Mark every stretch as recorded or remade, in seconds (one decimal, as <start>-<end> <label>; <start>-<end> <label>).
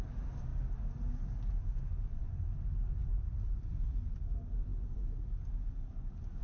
0.0-3.0 recorded; 3.0-4.1 remade; 4.1-6.4 recorded